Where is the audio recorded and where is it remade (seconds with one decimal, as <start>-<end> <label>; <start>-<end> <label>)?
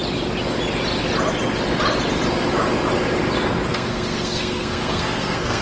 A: 0.0-3.7 recorded; 3.7-5.6 remade